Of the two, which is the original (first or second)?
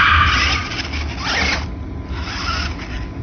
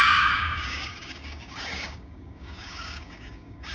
first